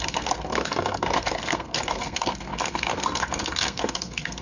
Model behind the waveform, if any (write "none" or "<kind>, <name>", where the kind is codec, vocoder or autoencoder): codec, SNAC